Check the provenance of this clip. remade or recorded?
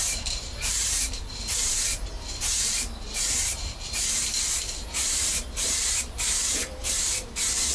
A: remade